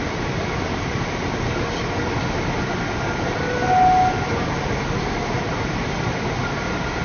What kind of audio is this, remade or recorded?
recorded